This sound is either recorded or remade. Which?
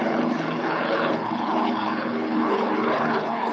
remade